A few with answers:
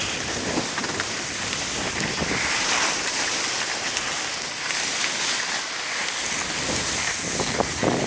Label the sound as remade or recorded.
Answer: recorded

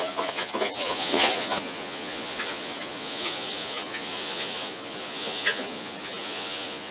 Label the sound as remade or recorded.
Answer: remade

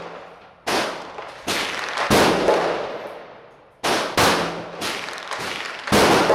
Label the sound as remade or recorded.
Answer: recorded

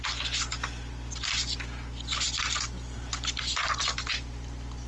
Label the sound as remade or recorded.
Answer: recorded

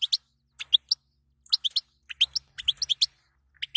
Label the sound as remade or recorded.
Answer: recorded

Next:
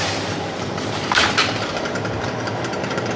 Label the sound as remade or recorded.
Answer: remade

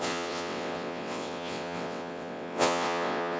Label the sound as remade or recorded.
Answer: remade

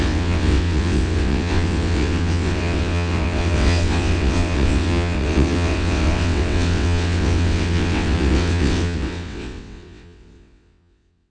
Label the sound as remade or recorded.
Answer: remade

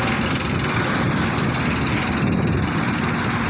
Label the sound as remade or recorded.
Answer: recorded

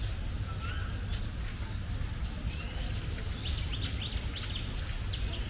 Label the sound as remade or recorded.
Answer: recorded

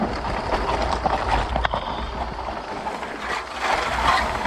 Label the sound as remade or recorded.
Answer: recorded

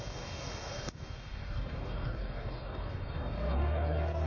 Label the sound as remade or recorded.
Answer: remade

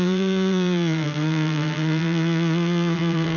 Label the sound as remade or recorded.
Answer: remade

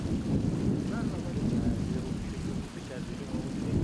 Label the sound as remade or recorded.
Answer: recorded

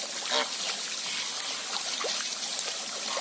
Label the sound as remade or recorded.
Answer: recorded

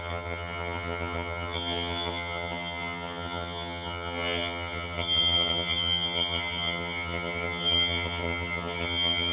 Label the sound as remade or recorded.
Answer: remade